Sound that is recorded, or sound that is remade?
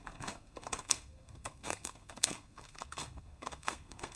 remade